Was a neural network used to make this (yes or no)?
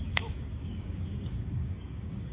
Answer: yes